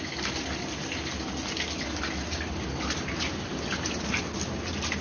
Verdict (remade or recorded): recorded